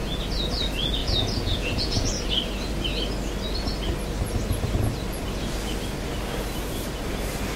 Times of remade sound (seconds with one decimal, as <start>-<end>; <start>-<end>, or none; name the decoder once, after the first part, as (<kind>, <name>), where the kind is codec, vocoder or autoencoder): 1.0-2.1 (vocoder, Vocos)